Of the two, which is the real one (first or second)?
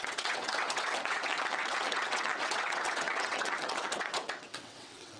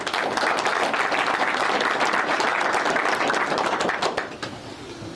second